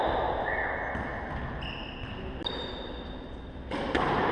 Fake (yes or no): no